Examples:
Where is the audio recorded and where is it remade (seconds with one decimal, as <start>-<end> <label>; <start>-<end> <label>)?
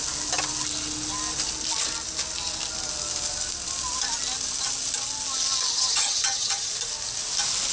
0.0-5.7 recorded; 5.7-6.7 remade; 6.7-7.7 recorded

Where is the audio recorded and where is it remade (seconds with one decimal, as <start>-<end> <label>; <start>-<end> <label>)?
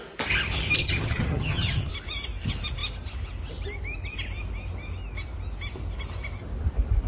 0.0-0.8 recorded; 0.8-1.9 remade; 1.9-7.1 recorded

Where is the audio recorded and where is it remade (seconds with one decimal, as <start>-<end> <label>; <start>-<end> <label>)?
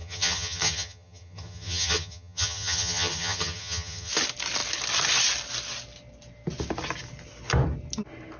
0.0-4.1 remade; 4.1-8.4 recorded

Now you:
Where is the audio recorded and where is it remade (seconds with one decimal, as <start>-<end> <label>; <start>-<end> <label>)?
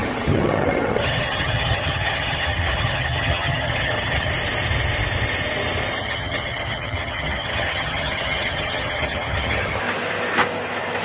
0.0-4.3 remade; 4.3-6.0 recorded; 6.0-9.8 remade; 9.8-11.0 recorded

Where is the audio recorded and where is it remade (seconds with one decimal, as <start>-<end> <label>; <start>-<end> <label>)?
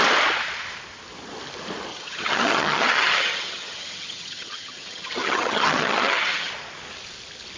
0.0-1.9 recorded; 1.9-6.5 remade; 6.5-7.6 recorded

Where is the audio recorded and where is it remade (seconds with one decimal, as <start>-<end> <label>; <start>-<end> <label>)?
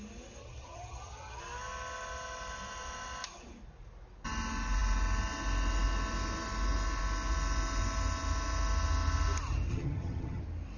0.0-0.4 recorded; 0.4-1.4 remade; 1.4-9.7 recorded; 9.7-10.4 remade; 10.4-10.8 recorded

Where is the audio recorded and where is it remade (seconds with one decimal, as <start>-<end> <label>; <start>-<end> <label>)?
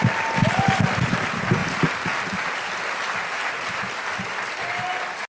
0.0-5.3 recorded